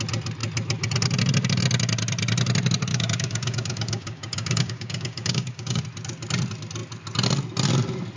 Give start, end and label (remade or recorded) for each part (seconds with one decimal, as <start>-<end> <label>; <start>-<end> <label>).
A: 0.0-2.9 recorded; 2.9-5.8 remade; 5.8-8.2 recorded